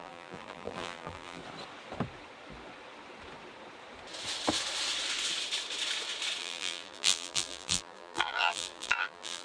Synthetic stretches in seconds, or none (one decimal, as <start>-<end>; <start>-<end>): 0.0-1.4; 6.4-9.4